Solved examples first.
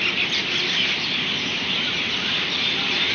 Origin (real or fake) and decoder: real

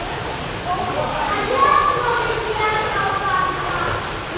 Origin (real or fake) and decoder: real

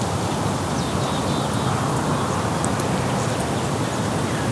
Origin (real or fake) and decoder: real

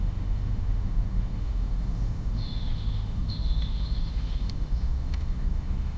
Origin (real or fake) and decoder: fake, autoencoder, DAC-VAE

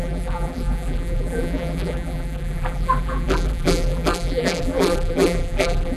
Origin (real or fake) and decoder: fake, vocoder, BigVGAN v2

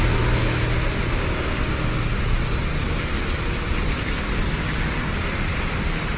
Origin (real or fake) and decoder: real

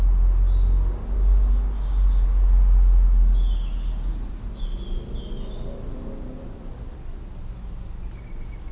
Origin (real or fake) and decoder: real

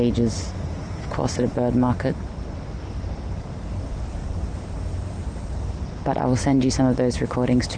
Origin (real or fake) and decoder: real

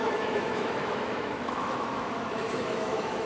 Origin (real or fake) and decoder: fake, autoencoder, DAC-VAE